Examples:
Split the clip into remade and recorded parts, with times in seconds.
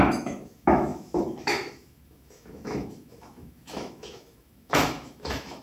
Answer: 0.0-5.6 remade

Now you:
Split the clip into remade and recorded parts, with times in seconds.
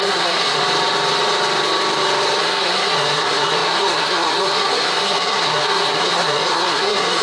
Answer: 0.0-0.6 remade; 0.6-2.4 recorded; 2.4-7.2 remade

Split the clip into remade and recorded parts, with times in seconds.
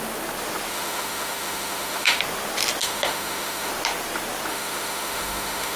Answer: 0.0-0.7 recorded; 0.7-2.2 remade; 2.2-2.8 recorded; 2.8-3.7 remade; 3.7-4.5 recorded; 4.5-5.8 remade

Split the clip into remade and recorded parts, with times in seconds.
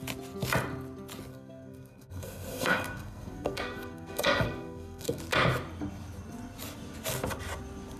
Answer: 0.0-1.3 recorded; 1.3-5.2 remade; 5.2-8.0 recorded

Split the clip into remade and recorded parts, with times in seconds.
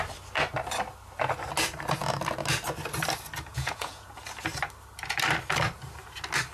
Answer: 0.0-3.5 recorded; 3.5-4.1 remade; 4.1-6.5 recorded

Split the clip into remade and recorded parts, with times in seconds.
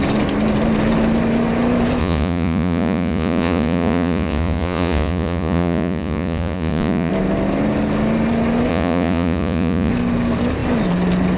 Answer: 0.0-2.0 recorded; 2.0-7.1 remade; 7.1-8.7 recorded; 8.7-9.9 remade; 9.9-11.4 recorded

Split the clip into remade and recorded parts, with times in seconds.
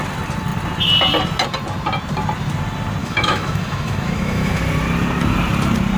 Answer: 0.0-3.0 recorded; 3.0-4.6 remade; 4.6-6.0 recorded